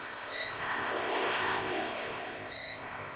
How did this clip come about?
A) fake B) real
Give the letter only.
A